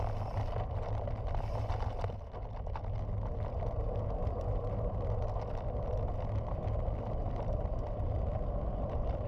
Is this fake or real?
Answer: real